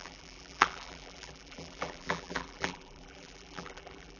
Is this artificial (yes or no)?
yes